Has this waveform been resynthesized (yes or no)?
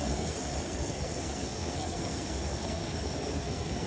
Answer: yes